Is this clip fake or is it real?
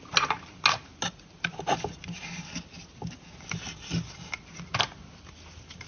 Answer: real